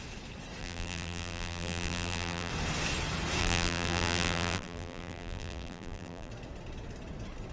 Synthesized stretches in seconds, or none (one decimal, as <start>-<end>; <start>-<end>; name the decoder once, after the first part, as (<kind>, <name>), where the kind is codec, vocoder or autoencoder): 0.6-2.5 (vocoder, BigVGAN v2); 3.4-6.3